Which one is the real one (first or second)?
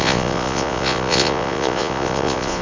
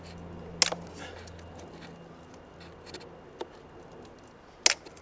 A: second